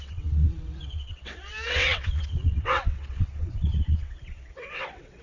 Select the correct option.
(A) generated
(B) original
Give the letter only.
A